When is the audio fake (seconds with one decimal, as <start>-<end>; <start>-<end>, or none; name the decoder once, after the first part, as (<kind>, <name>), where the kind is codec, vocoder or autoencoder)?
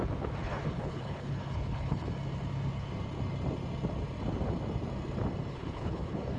0.4-2.1 (codec, HILCodec); 5.5-6.4